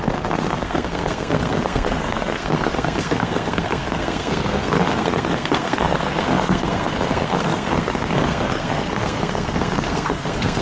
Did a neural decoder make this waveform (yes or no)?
yes